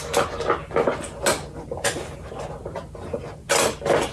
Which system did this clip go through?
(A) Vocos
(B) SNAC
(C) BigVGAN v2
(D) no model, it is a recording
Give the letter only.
D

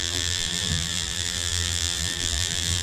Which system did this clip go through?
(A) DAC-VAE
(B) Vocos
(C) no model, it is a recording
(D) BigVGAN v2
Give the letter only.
D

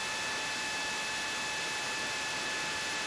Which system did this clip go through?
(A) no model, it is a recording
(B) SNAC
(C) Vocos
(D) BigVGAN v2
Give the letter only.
D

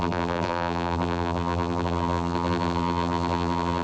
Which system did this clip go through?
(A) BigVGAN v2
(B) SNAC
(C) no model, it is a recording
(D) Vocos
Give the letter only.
A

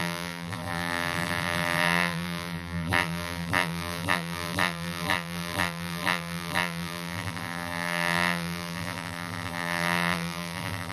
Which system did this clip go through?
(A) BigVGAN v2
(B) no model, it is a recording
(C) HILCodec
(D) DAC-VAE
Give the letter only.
A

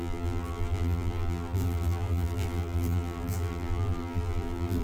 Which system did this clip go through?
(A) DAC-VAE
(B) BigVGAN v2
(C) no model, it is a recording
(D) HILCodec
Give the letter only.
B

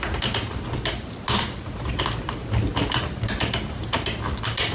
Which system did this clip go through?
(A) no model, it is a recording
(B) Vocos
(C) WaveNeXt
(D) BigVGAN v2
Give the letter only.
A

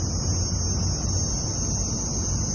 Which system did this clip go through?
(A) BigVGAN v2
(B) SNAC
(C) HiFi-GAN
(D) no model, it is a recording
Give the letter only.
D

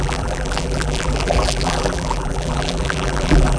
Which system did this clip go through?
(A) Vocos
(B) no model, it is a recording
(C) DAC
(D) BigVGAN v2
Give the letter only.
D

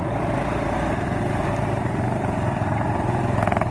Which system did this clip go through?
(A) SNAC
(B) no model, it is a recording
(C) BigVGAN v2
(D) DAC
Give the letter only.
C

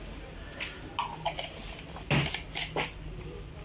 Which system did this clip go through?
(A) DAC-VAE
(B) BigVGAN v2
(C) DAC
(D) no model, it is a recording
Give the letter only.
D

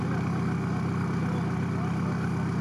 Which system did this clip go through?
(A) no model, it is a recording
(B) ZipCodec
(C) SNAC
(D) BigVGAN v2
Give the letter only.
A